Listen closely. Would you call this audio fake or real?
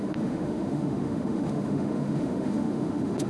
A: fake